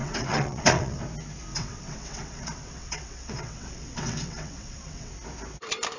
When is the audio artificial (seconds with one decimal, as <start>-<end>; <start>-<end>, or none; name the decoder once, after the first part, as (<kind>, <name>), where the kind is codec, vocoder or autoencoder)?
0.0-1.0 (vocoder, WaveNeXt); 1.5-5.1